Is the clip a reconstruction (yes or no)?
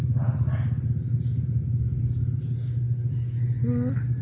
no